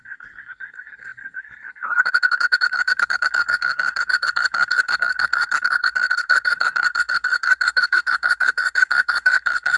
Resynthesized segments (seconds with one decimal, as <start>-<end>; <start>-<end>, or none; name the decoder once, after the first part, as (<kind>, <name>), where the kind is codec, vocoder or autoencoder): 0.0-9.8 (codec, SNAC)